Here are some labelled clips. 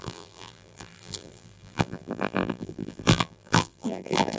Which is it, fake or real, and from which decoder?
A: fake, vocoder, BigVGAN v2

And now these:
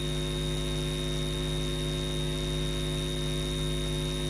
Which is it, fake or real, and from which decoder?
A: real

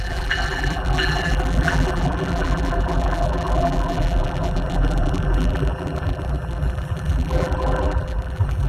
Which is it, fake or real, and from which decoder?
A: fake, vocoder, BigVGAN v2